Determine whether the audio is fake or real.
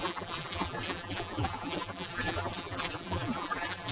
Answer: fake